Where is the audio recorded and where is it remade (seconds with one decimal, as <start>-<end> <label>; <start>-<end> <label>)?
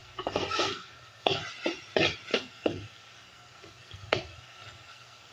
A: 0.0-1.4 remade; 1.4-2.3 recorded; 2.3-5.3 remade